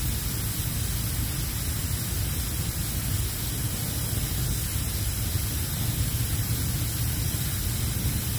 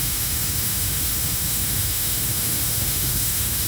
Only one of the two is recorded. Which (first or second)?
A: first